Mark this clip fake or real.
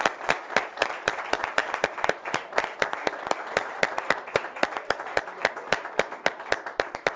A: fake